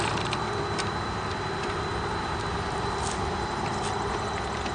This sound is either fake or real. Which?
fake